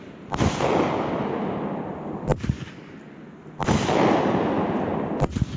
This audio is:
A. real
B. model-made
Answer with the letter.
A